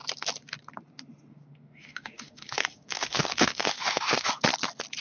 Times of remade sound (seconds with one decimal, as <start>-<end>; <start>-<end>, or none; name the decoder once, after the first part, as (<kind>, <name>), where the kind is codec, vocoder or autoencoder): 1.3-4.3 (autoencoder, DAC-VAE)